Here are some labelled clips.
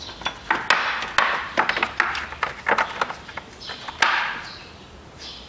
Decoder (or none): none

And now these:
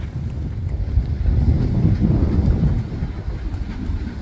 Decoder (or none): none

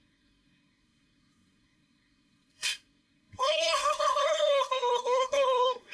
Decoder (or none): codec, SNAC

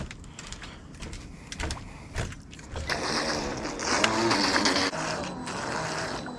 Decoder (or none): none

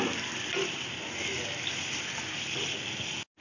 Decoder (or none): none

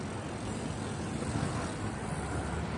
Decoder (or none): none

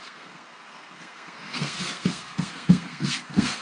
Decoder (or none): codec, SNAC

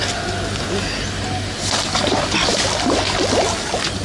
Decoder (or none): none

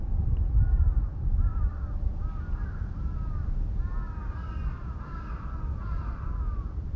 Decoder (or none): none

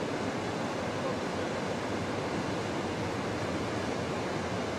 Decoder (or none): none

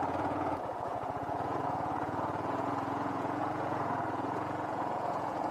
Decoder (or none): vocoder, Vocos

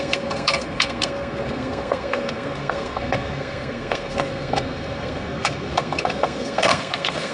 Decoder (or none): codec, SNAC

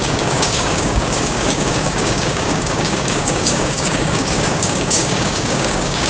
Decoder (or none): codec, DAC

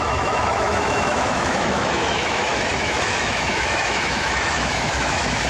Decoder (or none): autoencoder, DAC-VAE